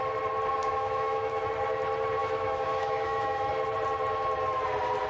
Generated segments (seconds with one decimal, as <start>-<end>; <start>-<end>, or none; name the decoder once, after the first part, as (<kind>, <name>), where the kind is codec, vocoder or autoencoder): 0.6-1.5 (autoencoder, DAC-VAE); 2.2-3.5